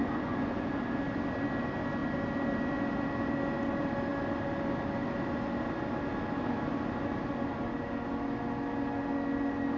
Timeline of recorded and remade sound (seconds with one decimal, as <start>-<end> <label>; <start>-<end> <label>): 0.0-0.7 remade; 0.7-9.8 recorded